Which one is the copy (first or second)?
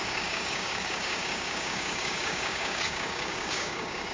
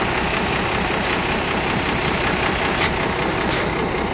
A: first